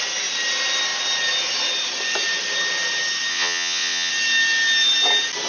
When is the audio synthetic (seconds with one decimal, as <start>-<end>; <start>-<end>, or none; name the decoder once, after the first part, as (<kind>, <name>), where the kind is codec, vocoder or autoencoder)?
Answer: 3.3-4.1 (vocoder, WaveNeXt)

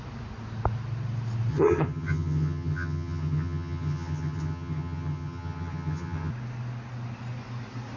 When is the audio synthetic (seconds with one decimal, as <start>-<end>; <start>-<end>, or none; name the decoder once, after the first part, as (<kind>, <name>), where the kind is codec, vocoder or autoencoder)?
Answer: 1.5-6.3 (vocoder, HiFi-GAN)